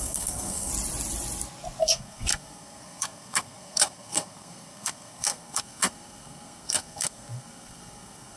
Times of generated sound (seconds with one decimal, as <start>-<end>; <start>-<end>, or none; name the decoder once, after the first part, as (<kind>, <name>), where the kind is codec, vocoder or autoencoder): 0.0-0.7 (codec, SNAC); 1.8-8.4